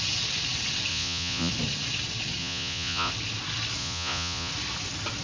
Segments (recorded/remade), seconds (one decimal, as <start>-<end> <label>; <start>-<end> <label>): 0.0-0.9 recorded; 0.9-1.5 remade; 1.5-2.4 recorded; 2.4-3.1 remade; 3.1-3.8 recorded; 3.8-4.5 remade; 4.5-5.2 recorded